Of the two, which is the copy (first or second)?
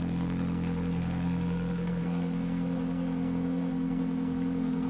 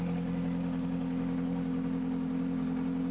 first